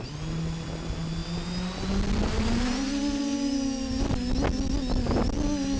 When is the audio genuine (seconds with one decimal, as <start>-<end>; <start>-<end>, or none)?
0.0-5.8